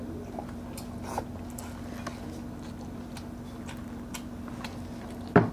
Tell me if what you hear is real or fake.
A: real